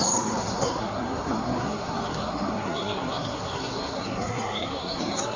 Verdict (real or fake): fake